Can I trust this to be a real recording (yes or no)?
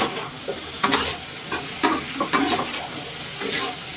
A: yes